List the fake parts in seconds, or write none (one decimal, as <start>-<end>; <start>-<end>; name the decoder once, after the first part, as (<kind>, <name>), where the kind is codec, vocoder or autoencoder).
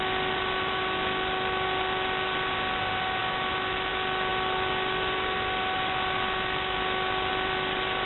none